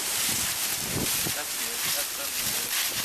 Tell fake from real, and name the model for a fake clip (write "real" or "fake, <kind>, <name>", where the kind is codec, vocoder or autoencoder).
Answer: fake, vocoder, BigVGAN v2